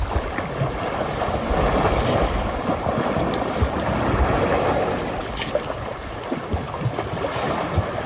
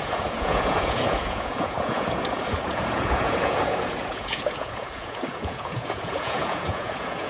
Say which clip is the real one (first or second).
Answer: first